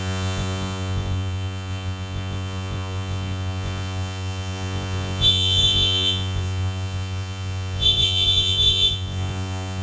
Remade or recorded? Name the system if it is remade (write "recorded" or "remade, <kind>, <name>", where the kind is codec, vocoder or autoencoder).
remade, vocoder, Vocos